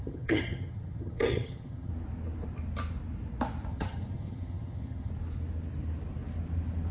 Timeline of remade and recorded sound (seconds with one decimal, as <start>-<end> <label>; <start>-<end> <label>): 0.0-1.9 remade; 1.9-3.7 recorded; 3.7-5.1 remade; 5.1-6.9 recorded